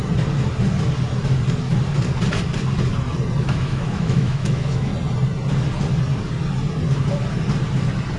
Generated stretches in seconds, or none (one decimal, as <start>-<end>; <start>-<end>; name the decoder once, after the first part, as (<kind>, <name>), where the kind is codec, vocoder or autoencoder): 3.4-4.9 (autoencoder, DAC-VAE)